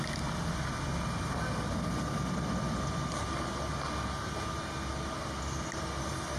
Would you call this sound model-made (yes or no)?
no